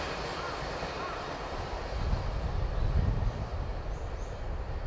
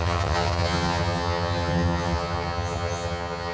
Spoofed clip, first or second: second